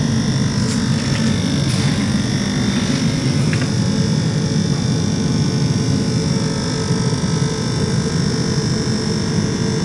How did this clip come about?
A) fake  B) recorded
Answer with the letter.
B